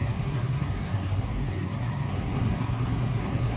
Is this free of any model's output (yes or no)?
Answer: no